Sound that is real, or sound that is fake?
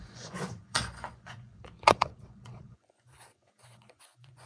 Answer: fake